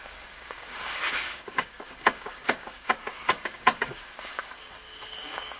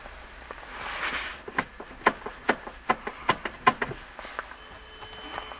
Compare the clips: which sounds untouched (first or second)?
second